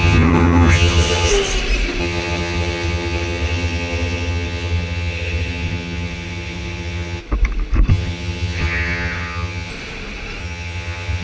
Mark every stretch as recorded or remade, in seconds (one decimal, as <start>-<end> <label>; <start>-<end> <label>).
0.0-1.3 remade; 1.3-2.0 recorded; 2.0-7.2 remade; 7.2-7.9 recorded; 7.9-9.7 remade; 9.7-10.4 recorded; 10.4-11.2 remade